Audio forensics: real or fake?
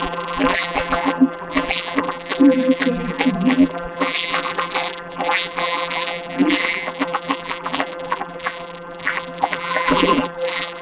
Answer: fake